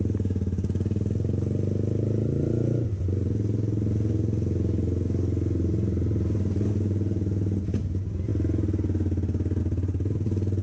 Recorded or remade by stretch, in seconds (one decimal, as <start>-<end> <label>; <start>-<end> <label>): 0.0-10.6 recorded